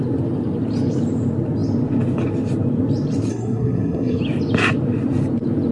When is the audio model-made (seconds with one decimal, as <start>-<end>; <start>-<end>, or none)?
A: 3.3-4.2